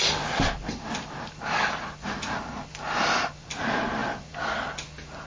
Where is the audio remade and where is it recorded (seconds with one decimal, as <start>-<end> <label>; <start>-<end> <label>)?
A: 0.0-0.7 recorded; 0.7-3.6 remade; 3.6-4.0 recorded; 4.0-4.5 remade; 4.5-5.3 recorded